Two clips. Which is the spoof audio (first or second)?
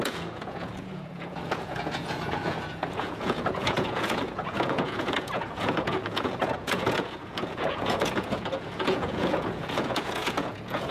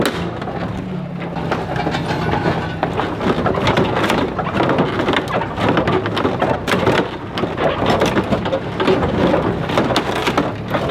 first